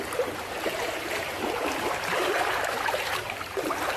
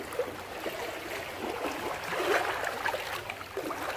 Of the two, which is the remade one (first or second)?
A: first